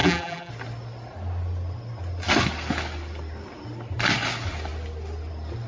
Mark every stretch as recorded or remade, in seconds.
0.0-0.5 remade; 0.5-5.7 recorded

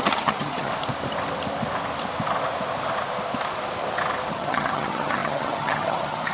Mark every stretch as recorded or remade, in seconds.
0.0-0.7 remade; 0.7-4.3 recorded; 4.3-6.3 remade

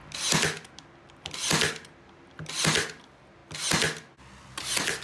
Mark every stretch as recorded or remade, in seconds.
0.0-5.0 recorded